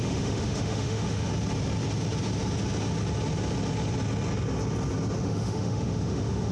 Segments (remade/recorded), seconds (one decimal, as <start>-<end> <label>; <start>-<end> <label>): 0.0-1.3 remade; 1.3-5.2 recorded; 5.2-6.5 remade